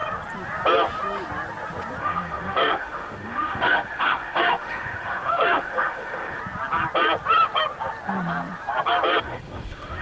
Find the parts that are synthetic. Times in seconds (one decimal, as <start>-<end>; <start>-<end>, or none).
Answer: 2.0-6.4; 9.2-10.0